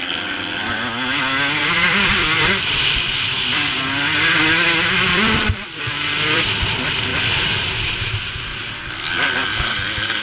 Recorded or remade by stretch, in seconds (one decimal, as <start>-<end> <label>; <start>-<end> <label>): 0.0-1.6 recorded; 1.6-3.4 remade; 3.4-5.1 recorded; 5.1-6.4 remade; 6.4-10.2 recorded